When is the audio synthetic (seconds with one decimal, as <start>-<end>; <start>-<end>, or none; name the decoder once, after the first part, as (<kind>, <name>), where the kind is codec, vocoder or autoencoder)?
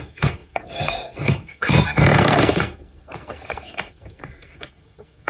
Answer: 0.0-5.3 (codec, SNAC)